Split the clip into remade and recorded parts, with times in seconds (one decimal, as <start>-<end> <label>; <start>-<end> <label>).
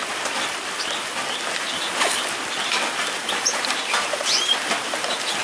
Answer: 0.0-5.4 remade